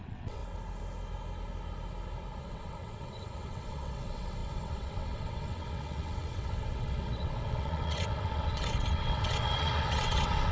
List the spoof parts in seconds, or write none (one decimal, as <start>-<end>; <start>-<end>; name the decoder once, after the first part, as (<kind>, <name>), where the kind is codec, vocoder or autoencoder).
0.0-0.4 (vocoder, WaveNeXt); 2.4-10.5